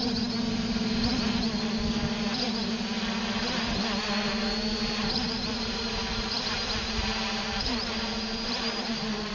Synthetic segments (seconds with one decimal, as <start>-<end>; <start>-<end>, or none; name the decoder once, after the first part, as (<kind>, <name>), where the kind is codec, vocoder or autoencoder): 5.0-9.3 (vocoder, BigVGAN v2)